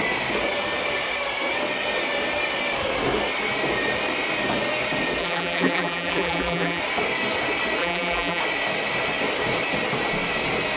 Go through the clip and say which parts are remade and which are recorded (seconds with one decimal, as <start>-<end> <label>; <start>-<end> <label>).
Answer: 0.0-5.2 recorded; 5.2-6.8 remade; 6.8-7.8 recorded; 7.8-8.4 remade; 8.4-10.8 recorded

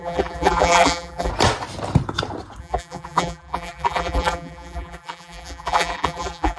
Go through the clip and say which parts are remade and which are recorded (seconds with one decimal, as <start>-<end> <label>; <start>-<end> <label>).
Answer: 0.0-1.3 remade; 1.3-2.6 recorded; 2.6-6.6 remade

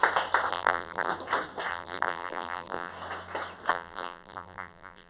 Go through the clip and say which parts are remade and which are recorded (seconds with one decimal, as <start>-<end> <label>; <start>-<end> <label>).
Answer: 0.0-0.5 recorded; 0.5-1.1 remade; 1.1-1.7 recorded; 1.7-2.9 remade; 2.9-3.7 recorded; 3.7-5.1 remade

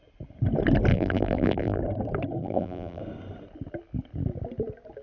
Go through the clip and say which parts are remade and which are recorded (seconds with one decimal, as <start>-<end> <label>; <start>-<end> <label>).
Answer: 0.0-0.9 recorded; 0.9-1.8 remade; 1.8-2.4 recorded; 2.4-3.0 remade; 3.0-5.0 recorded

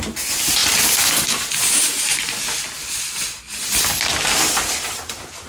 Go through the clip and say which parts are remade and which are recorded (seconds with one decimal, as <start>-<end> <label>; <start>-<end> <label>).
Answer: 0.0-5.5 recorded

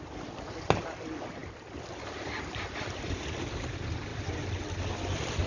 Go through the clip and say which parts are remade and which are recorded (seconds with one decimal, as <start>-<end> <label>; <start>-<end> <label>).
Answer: 0.0-4.1 recorded; 4.1-4.9 remade; 4.9-5.5 recorded

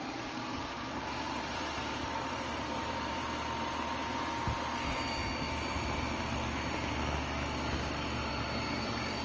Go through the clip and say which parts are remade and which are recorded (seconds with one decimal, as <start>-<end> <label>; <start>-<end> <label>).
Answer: 0.0-3.2 remade; 3.2-8.3 recorded; 8.3-9.2 remade

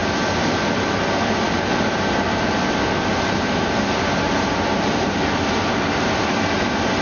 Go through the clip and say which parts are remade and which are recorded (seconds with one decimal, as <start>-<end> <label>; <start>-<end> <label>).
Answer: 0.0-1.7 recorded; 1.7-2.2 remade; 2.2-3.1 recorded; 3.1-6.3 remade; 6.3-7.0 recorded